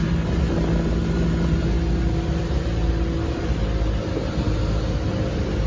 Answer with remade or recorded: recorded